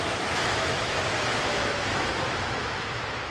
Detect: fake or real fake